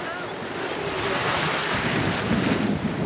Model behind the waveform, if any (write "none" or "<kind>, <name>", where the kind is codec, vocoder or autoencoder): none